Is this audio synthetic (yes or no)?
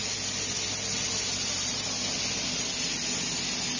no